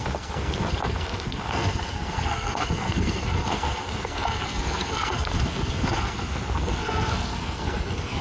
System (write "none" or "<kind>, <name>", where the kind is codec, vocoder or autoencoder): codec, SNAC